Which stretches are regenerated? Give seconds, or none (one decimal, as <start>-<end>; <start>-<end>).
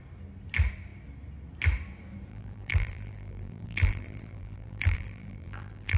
2.3-6.0